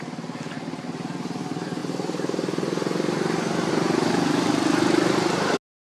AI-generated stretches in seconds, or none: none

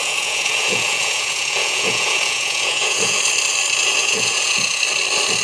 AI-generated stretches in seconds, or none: 0.0-3.2 (vocoder, Vocos); 4.0-4.8

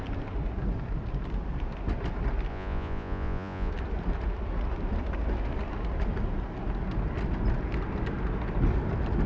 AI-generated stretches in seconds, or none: 2.5-3.7 (vocoder, Vocos)

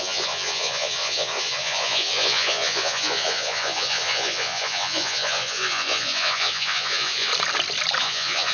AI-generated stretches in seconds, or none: 0.0-7.3 (vocoder, Vocos); 8.0-8.5

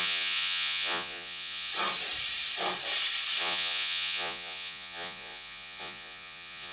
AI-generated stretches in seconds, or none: 0.0-1.7 (vocoder, Vocos); 3.4-6.7

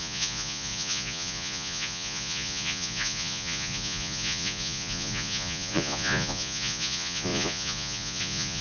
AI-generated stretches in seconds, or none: 0.0-8.6 (vocoder, Vocos)